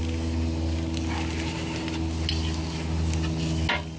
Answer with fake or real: real